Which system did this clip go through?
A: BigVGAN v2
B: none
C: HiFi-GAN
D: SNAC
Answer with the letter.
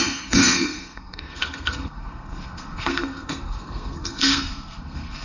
D